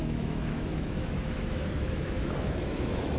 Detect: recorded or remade remade